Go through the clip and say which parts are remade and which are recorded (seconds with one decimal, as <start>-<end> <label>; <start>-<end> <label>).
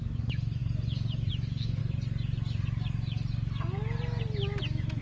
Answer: 0.0-0.6 remade; 0.6-1.3 recorded; 1.3-1.8 remade; 1.8-4.6 recorded; 4.6-5.0 remade